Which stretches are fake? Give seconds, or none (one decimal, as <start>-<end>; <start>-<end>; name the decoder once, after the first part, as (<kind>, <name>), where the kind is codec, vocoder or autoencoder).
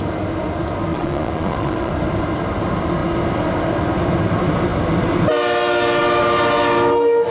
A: 0.9-1.9 (vocoder, Vocos)